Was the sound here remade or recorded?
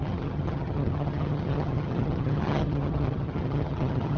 remade